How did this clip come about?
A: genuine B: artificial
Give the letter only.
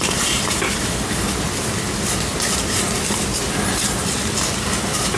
A